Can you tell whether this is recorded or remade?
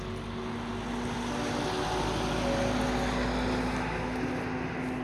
recorded